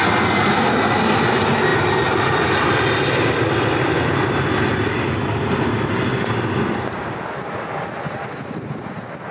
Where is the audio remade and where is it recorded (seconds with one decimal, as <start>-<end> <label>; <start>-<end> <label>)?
0.0-9.3 recorded